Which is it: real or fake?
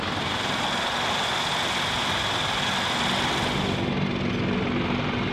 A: real